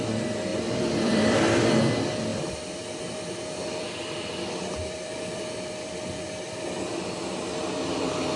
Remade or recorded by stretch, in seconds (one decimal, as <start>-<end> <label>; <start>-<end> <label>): 0.0-0.5 recorded; 0.5-1.8 remade; 1.8-2.3 recorded; 2.3-6.8 remade; 6.8-8.4 recorded